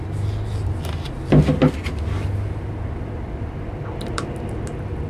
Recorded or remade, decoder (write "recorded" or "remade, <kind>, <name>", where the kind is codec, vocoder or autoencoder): recorded